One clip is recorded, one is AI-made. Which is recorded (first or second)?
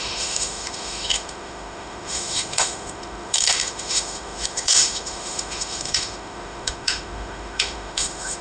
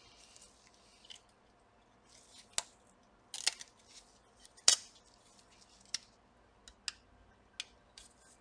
second